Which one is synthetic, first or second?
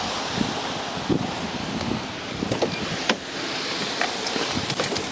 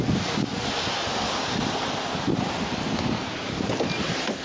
first